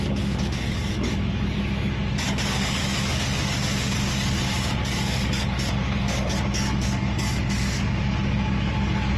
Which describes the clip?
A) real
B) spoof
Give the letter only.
B